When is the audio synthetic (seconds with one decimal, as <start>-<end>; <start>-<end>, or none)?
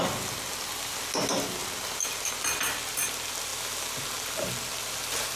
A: none